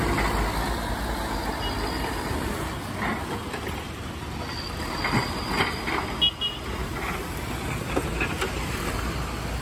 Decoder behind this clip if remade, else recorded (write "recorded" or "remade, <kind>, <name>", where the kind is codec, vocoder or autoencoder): recorded